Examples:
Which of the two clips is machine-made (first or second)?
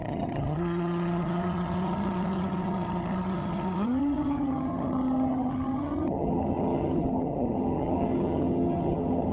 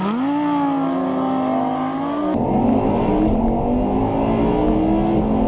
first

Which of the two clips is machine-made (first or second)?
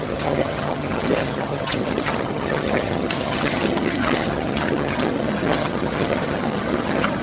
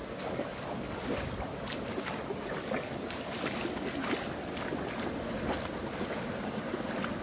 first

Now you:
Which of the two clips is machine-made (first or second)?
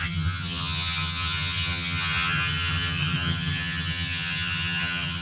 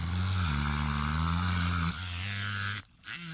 first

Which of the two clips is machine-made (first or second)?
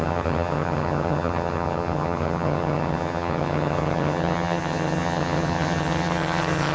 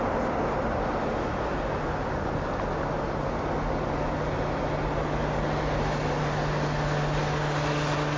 first